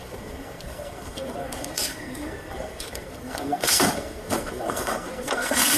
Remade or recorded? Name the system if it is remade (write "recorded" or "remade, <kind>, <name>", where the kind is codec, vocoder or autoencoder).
remade, codec, SNAC